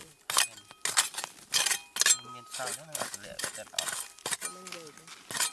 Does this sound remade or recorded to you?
recorded